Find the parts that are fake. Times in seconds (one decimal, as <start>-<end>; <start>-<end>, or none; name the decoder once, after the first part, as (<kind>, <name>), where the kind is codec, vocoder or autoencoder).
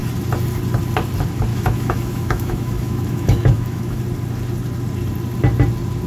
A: 1.5-4.0 (autoencoder, DAC-VAE)